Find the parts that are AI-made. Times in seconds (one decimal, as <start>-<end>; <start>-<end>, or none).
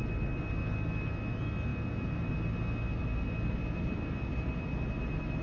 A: 1.7-2.3